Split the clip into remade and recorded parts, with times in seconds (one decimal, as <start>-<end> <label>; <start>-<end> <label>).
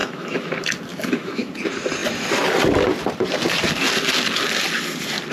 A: 0.0-0.5 remade; 0.5-0.9 recorded; 0.9-1.5 remade; 1.5-5.3 recorded